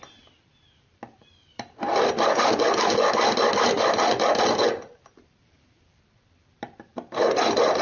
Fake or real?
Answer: fake